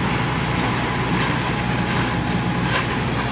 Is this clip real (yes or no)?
yes